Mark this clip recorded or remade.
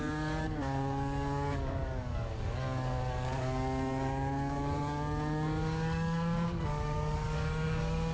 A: remade